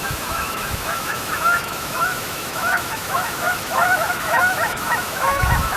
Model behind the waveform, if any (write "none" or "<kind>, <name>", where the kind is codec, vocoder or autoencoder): autoencoder, DAC-VAE